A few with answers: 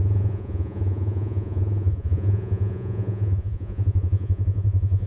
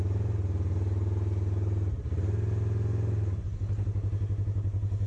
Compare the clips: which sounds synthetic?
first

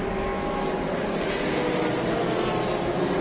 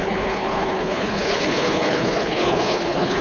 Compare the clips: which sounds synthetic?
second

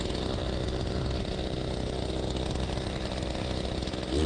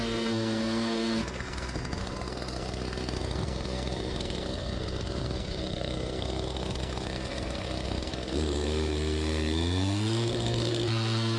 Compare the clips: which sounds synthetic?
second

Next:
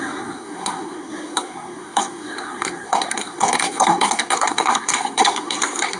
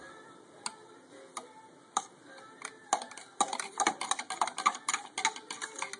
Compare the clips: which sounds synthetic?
first